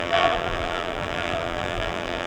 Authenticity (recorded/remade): remade